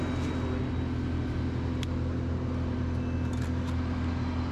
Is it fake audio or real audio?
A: real